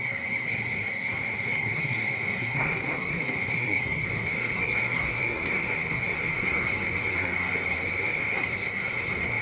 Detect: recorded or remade remade